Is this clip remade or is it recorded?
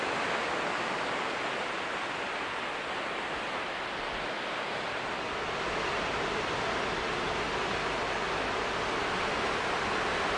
recorded